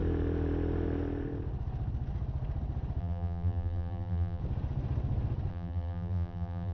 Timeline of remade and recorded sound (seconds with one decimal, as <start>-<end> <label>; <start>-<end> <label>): 0.0-3.0 recorded; 3.0-4.4 remade; 4.4-5.5 recorded; 5.5-6.7 remade